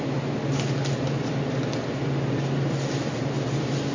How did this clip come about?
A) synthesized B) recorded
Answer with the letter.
B